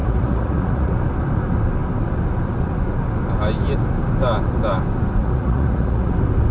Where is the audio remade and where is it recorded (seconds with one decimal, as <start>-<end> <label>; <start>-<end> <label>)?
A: 0.0-0.9 remade; 0.9-5.2 recorded; 5.2-6.1 remade; 6.1-6.5 recorded